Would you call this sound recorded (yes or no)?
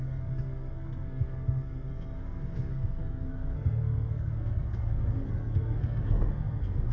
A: no